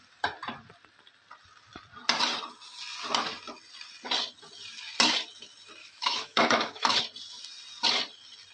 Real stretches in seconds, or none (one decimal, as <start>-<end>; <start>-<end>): 0.0-5.8; 7.0-8.5